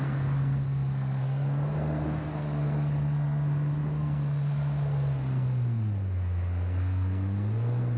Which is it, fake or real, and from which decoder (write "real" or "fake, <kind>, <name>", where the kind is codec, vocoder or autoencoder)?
fake, codec, SNAC